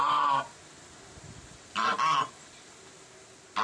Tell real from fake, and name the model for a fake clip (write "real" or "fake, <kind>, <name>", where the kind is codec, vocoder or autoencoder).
real